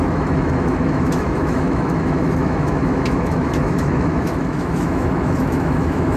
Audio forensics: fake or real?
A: fake